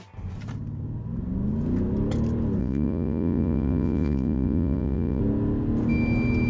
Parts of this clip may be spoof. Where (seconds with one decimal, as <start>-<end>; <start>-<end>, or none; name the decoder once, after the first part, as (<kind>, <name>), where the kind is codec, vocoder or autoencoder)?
2.6-5.2 (vocoder, Vocos)